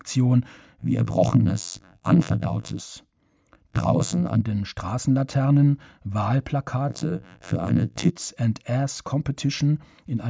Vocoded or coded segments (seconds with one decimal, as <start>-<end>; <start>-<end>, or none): 0.8-2.8; 3.7-4.4; 6.9-8.1